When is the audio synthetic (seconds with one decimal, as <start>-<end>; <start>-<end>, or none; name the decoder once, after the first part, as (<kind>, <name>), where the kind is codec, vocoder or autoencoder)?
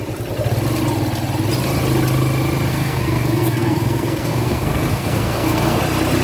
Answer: 2.7-5.8 (codec, SNAC)